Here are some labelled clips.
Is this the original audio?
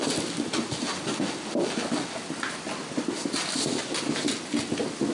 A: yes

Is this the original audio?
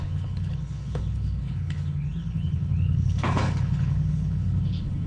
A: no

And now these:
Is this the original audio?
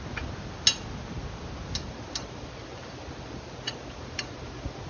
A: yes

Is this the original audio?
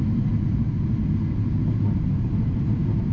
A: yes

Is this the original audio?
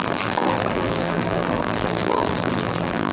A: no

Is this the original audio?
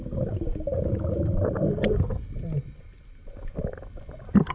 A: yes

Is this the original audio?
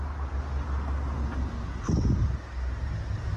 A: yes